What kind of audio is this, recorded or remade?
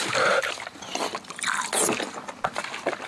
recorded